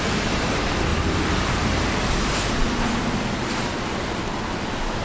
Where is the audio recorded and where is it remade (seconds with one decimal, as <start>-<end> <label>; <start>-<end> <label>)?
0.0-0.9 recorded; 0.9-3.0 remade; 3.0-5.0 recorded